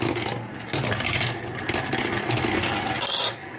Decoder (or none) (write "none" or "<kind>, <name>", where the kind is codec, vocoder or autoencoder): none